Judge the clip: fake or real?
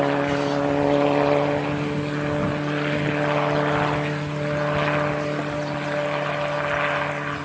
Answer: real